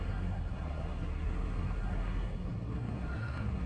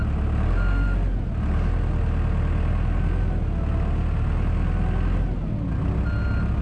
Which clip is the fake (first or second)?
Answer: first